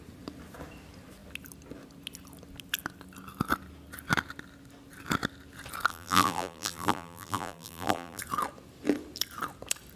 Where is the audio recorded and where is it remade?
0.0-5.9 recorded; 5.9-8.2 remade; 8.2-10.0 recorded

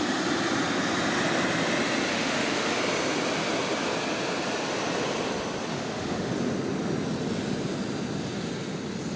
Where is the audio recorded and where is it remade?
0.0-2.1 recorded; 2.1-2.8 remade; 2.8-5.7 recorded; 5.7-6.3 remade; 6.3-9.2 recorded